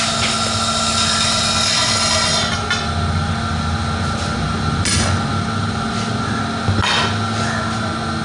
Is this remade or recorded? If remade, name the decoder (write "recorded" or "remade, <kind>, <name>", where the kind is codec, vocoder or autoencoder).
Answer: recorded